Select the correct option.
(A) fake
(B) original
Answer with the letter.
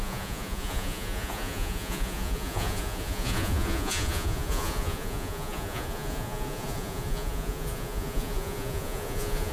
A